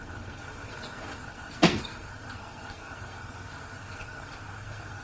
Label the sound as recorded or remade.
remade